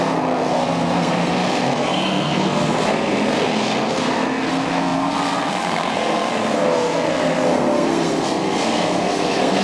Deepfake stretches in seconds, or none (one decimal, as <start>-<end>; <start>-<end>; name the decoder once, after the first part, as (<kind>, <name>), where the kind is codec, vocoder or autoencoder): 0.0-9.6 (codec, SNAC)

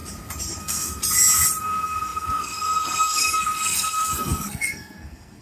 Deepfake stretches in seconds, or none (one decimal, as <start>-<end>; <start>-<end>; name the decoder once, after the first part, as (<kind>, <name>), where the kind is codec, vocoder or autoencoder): 0.6-1.0 (codec, SNAC); 1.6-5.4

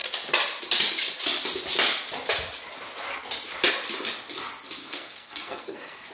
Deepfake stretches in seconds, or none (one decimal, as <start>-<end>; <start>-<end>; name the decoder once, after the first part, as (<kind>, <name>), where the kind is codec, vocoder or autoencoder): 4.8-6.1 (codec, SNAC)

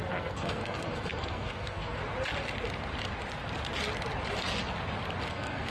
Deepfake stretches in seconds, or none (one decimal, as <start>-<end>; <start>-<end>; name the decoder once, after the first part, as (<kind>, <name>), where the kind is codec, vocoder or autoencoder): 0.0-2.0 (codec, SNAC); 5.3-5.7

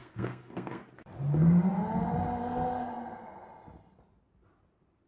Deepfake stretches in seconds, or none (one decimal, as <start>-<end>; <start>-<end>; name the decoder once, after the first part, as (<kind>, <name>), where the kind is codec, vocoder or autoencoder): 0.0-0.8 (codec, SNAC)

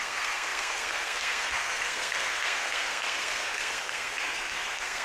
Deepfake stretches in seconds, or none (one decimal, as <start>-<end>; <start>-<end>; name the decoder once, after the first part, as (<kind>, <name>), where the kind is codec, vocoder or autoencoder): 0.0-5.0 (codec, SNAC)

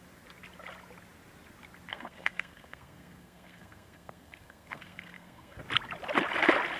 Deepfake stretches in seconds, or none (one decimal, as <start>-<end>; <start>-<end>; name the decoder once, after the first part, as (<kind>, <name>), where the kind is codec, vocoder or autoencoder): 1.9-5.6 (codec, SNAC)